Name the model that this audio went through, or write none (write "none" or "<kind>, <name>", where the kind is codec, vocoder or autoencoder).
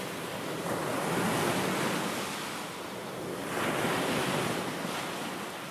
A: none